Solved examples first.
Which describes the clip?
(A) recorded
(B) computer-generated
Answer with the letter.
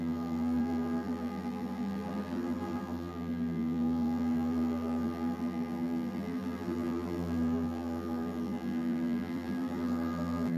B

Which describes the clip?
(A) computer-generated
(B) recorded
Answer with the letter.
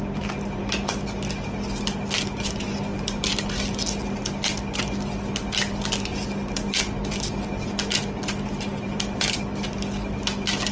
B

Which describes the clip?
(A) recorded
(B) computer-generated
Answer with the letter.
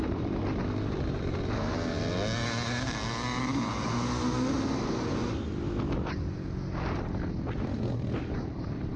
A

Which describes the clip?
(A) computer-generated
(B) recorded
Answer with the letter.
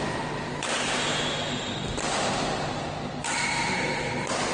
B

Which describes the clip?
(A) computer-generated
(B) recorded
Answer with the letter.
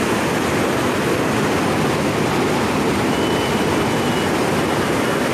B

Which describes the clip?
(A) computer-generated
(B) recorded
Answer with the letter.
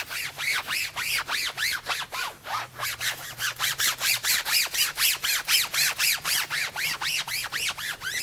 A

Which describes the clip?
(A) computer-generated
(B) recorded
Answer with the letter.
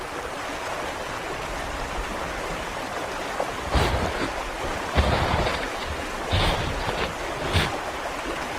B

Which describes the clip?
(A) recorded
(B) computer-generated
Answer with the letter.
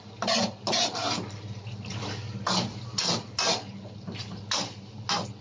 A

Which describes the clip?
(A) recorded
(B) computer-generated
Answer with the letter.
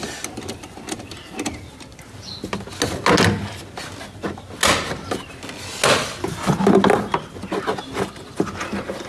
A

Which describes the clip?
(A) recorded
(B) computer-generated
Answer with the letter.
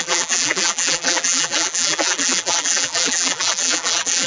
B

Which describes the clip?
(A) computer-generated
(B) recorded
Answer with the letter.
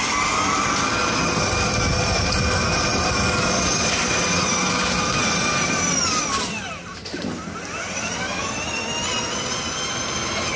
B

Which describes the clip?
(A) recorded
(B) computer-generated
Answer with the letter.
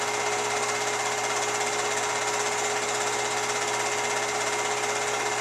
A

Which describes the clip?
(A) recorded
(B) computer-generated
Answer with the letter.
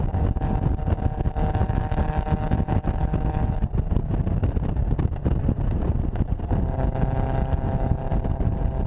A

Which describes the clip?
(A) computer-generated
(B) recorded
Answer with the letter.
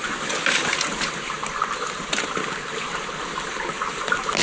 B